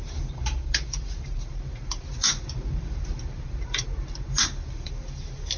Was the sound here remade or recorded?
remade